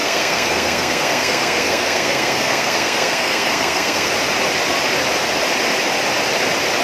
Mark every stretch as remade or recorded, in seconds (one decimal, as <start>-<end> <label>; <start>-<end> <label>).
0.0-4.1 remade; 4.1-6.8 recorded